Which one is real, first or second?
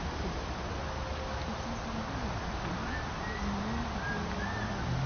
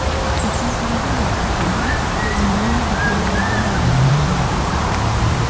first